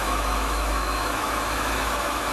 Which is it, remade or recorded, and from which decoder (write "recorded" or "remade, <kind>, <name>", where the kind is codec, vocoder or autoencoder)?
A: remade, autoencoder, DAC-VAE